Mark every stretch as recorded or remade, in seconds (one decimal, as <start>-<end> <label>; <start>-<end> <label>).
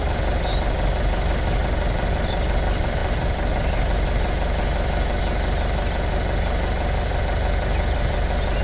0.0-8.6 recorded